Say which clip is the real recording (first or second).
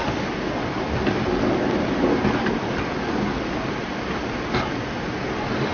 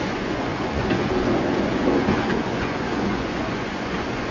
first